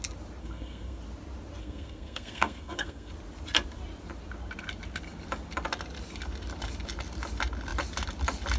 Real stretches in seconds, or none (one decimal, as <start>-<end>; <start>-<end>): 0.0-0.4; 1.0-1.6; 3.1-8.6